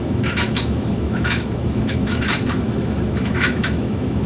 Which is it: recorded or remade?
remade